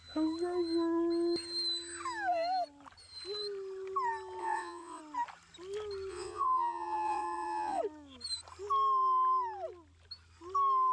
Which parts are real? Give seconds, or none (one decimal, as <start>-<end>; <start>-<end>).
0.0-4.4; 5.0-6.1; 7.8-10.9